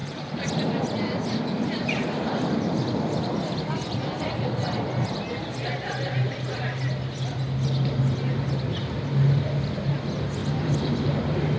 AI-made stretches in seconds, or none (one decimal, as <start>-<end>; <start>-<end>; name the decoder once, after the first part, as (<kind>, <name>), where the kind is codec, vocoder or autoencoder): 0.0-0.7 (vocoder, BigVGAN v2); 10.4-11.2